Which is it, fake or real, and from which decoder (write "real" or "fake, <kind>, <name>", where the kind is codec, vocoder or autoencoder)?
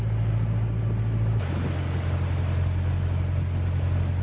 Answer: real